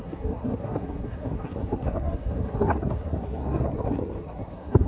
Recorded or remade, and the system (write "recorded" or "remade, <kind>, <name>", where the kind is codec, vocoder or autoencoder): remade, codec, SNAC